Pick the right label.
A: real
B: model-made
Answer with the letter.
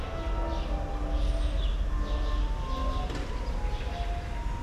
A